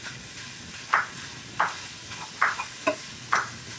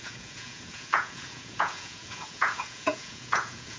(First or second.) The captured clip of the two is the first